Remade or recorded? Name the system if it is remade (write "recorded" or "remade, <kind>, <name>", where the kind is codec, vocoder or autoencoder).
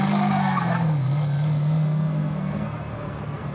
remade, codec, SNAC